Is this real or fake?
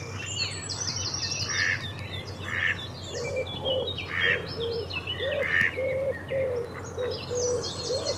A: real